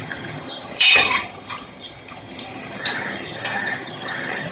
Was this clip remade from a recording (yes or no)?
yes